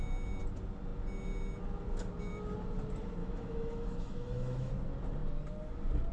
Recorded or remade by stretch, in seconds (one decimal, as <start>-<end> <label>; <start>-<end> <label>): 0.0-3.2 recorded; 3.2-4.7 remade; 4.7-6.1 recorded